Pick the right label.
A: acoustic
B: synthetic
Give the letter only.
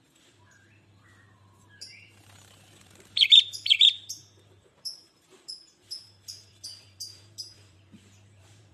B